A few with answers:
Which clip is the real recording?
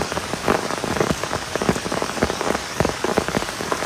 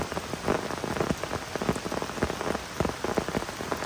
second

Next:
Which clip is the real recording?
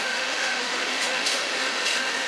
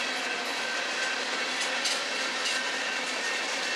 second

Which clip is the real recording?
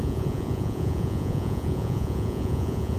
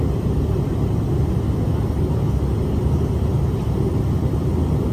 second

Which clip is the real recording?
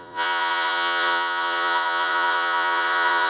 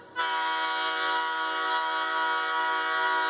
second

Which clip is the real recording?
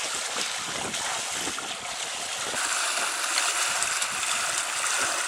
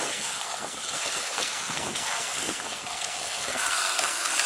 first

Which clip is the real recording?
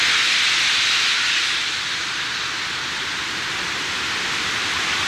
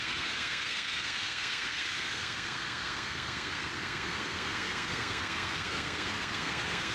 first